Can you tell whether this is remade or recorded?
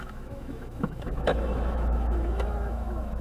remade